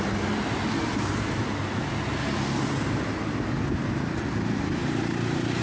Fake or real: real